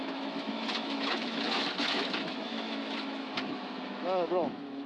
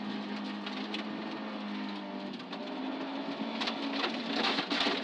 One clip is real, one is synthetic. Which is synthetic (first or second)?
first